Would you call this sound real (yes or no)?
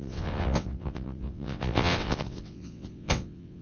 no